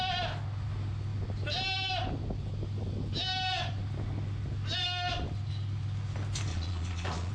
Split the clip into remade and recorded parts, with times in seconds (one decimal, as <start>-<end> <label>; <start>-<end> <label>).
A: 0.0-6.5 recorded; 6.5-7.3 remade